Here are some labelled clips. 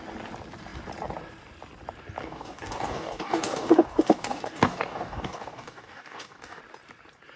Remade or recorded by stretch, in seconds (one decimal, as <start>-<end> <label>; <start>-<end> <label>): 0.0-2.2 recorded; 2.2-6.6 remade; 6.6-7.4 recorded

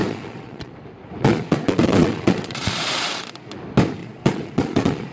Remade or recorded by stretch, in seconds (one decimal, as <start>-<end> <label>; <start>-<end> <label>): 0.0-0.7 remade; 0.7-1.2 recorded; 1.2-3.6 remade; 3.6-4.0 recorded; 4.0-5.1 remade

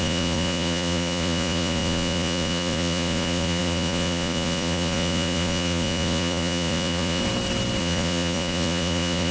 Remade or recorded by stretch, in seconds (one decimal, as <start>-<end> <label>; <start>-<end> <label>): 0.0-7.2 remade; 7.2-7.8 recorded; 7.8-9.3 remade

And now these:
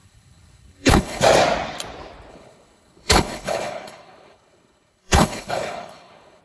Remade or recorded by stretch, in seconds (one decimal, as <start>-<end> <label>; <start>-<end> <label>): 0.0-1.2 remade; 1.2-2.3 recorded; 2.3-6.4 remade